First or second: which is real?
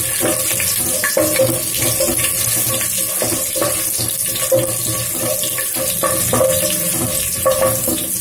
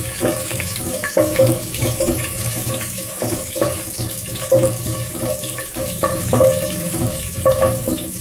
first